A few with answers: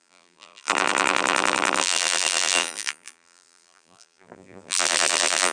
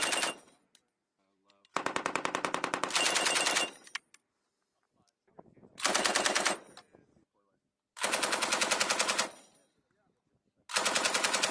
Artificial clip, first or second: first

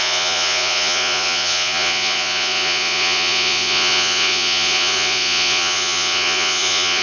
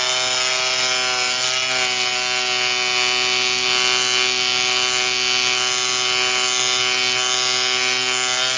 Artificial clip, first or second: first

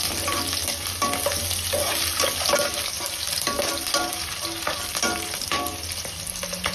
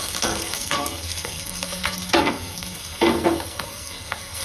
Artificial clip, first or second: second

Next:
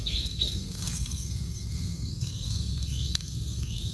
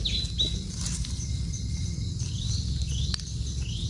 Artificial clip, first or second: first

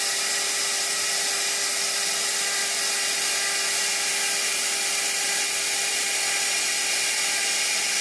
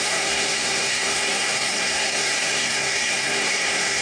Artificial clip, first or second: second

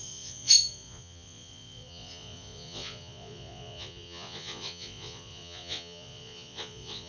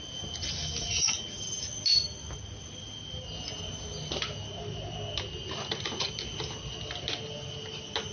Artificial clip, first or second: first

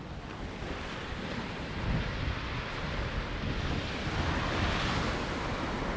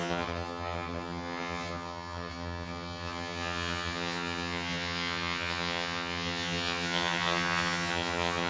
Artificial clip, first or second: second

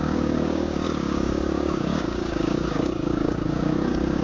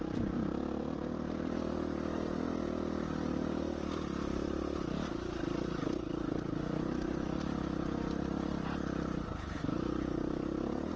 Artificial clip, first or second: first